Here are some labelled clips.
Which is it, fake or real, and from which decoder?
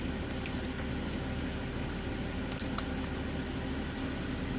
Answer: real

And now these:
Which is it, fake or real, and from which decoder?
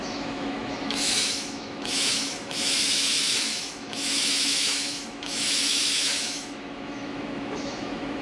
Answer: fake, autoencoder, DAC-VAE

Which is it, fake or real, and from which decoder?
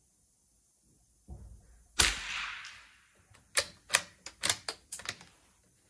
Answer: real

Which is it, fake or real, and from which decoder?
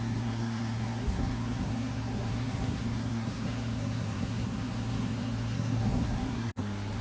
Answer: fake, codec, SNAC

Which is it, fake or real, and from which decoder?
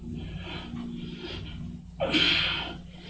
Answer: real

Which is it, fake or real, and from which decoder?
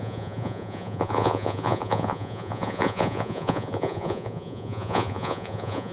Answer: fake, vocoder, Vocos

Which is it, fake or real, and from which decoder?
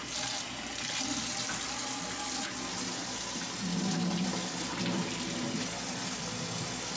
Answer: real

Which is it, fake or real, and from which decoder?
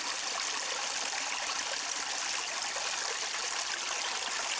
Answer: real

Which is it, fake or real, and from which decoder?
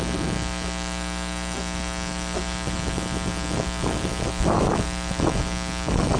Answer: fake, autoencoder, DAC-VAE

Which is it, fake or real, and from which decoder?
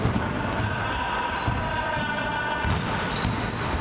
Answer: real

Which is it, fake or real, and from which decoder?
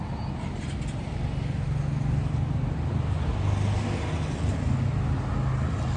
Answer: real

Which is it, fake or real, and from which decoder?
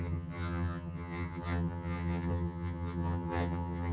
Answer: fake, vocoder, HiFi-GAN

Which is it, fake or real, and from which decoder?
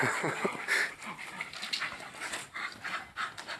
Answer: real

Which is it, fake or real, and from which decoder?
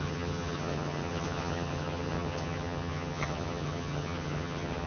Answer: fake, vocoder, HiFi-GAN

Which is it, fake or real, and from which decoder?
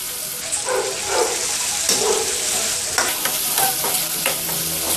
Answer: real